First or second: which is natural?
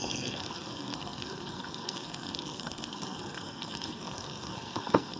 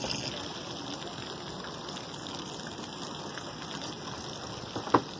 second